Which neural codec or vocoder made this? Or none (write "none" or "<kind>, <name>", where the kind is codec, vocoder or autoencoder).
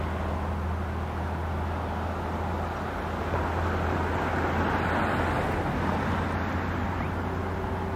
none